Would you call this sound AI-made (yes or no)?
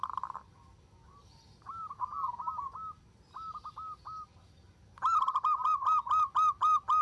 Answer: no